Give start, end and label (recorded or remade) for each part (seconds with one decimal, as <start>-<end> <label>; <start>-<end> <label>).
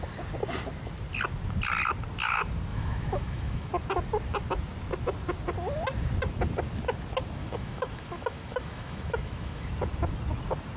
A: 0.0-2.7 recorded; 2.7-3.7 remade; 3.7-7.4 recorded; 7.4-9.7 remade; 9.7-10.8 recorded